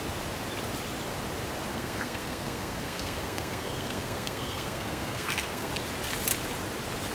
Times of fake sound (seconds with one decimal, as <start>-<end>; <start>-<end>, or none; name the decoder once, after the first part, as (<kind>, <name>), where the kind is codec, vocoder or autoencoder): 1.7-5.7 (codec, SNAC)